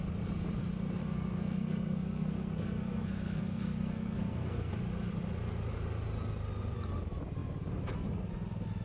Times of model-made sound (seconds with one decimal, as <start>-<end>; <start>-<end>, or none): 1.0-4.7